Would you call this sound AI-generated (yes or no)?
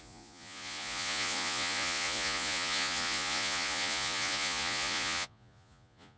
yes